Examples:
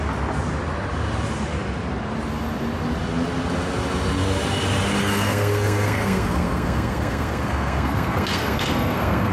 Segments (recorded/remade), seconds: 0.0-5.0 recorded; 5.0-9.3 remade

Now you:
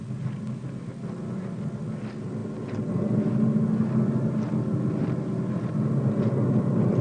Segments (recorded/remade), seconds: 0.0-7.0 recorded

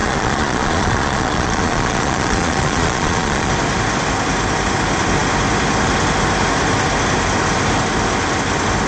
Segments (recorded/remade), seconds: 0.0-3.5 remade; 3.5-8.9 recorded